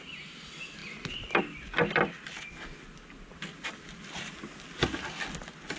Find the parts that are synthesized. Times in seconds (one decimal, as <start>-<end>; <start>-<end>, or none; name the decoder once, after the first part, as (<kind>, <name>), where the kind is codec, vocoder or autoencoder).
none